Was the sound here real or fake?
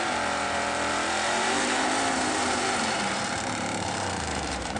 fake